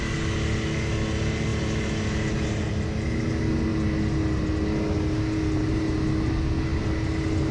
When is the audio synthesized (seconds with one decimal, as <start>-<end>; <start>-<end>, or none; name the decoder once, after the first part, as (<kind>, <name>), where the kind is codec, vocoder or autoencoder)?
none